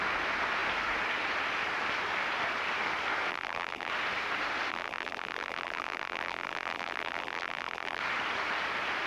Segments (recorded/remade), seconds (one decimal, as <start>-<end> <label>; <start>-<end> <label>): 0.0-3.3 recorded; 3.3-3.9 remade; 3.9-4.7 recorded; 4.7-8.0 remade; 8.0-9.1 recorded